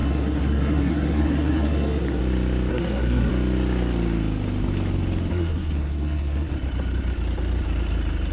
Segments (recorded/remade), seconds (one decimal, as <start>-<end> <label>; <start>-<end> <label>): 0.0-2.2 remade; 2.2-2.7 recorded; 2.7-3.3 remade; 3.3-5.3 recorded; 5.3-6.5 remade; 6.5-8.3 recorded